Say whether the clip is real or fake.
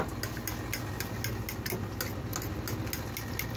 real